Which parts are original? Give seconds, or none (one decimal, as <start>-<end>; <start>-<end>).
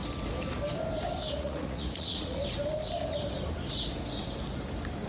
0.0-1.3; 2.4-5.1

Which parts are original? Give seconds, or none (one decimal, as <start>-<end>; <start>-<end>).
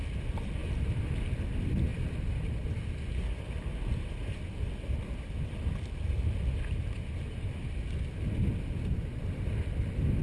0.0-10.2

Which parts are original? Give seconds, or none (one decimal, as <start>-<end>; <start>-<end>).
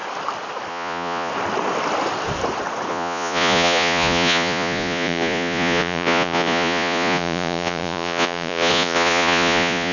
0.0-0.7; 1.3-2.9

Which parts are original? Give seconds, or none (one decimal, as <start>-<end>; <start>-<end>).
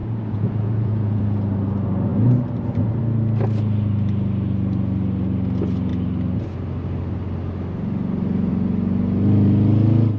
1.2-10.2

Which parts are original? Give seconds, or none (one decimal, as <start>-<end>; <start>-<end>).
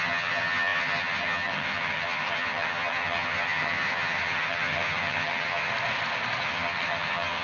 5.7-6.4